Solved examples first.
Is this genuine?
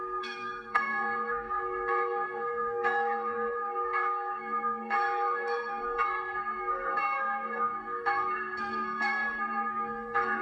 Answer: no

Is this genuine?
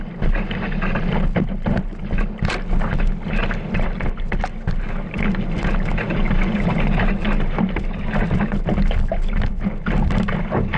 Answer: yes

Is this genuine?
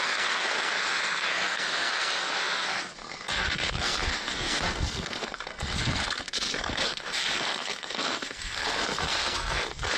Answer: no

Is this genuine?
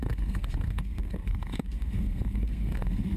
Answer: no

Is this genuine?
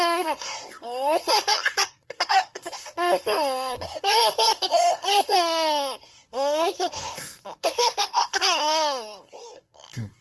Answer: no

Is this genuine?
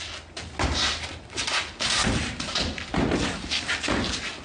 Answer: yes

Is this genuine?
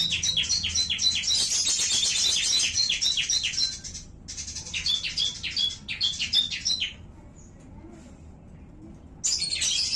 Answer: yes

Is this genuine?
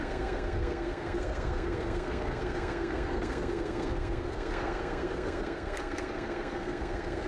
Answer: no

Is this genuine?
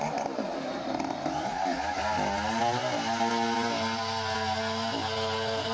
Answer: yes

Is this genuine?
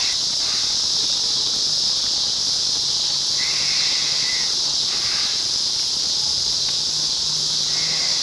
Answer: yes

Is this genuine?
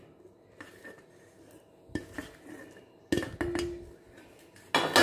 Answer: yes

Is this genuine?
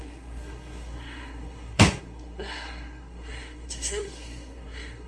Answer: no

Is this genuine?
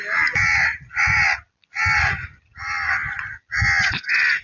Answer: yes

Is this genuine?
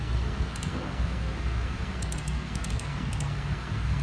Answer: no